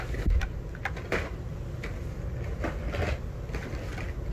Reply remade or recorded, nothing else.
recorded